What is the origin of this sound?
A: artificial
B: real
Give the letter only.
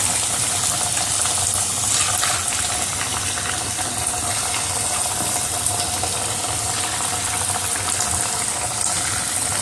B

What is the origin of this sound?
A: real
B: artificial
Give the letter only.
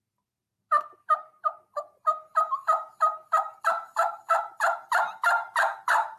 A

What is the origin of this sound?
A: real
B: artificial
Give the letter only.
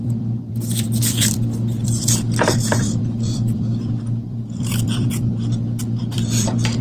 B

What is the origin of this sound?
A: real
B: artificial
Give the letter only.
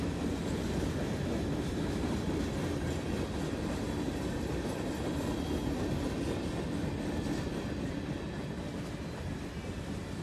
A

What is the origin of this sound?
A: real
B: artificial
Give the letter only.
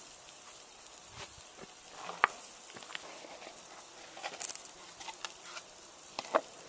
A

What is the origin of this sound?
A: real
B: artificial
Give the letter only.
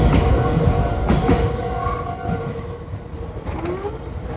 A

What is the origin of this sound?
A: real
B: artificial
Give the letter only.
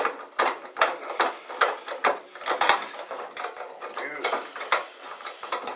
B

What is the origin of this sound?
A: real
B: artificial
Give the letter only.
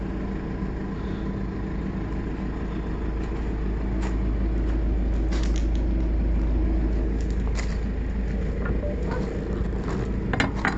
A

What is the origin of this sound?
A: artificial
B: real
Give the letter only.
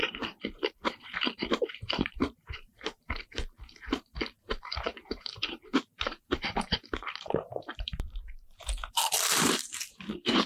A